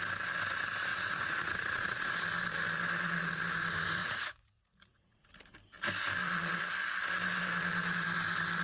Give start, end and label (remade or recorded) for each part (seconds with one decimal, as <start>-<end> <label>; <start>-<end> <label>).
0.0-0.9 recorded; 0.9-2.0 remade; 2.0-4.0 recorded; 4.0-5.3 remade; 5.3-8.6 recorded